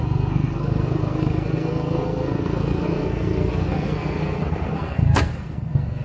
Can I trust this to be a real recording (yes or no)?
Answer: no